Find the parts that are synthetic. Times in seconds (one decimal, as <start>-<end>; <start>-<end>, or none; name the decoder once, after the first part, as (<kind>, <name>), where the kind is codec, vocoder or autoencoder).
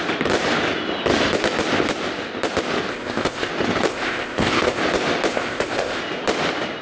2.9-3.5 (codec, ZipCodec); 3.9-4.8; 5.3-6.0